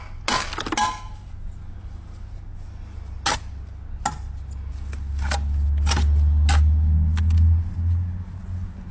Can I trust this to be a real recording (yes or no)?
yes